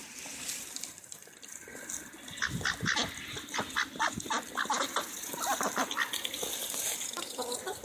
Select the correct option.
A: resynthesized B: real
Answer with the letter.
B